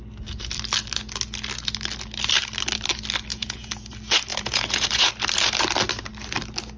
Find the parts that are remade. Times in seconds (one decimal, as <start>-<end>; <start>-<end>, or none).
3.3-3.9; 4.3-5.1